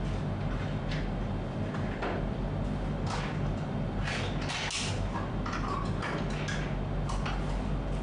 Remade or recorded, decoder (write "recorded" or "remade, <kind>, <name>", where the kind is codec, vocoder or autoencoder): recorded